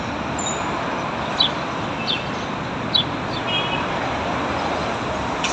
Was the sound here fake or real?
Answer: real